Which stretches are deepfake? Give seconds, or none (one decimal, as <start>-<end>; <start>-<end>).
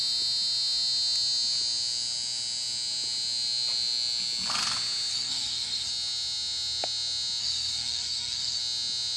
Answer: 5.1-5.9; 7.4-8.6